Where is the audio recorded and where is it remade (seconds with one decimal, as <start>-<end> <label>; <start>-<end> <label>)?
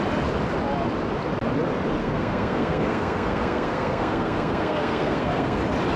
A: 0.0-2.0 recorded; 2.0-5.6 remade; 5.6-6.0 recorded